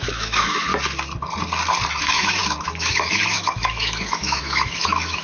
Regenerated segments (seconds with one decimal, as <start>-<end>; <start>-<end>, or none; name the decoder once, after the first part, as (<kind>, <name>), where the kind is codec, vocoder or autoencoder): 0.0-0.7 (autoencoder, DAC-VAE); 2.0-5.2